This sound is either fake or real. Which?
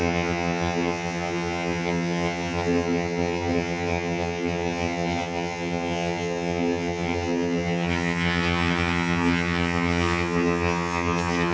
fake